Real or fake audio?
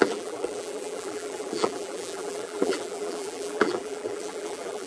fake